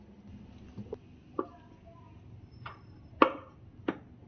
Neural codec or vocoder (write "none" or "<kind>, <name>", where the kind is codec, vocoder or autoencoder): none